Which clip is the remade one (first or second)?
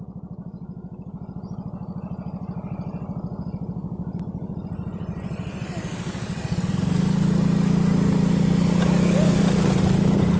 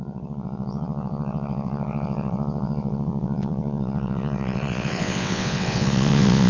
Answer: second